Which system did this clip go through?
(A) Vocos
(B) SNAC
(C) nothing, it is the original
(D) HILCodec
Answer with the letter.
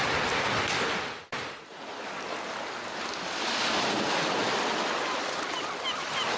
C